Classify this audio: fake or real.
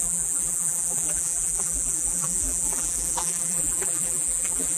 fake